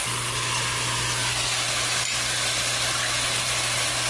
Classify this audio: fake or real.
real